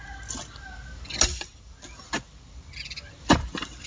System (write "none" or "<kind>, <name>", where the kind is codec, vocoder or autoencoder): none